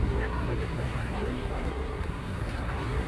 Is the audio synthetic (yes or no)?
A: yes